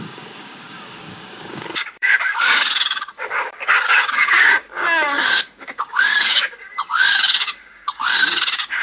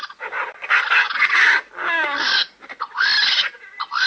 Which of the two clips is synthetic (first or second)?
first